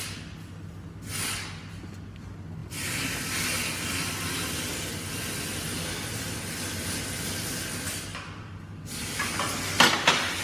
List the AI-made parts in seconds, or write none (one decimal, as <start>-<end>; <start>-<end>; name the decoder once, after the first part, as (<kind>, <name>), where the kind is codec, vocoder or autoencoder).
8.1-8.6 (vocoder, BigVGAN v2)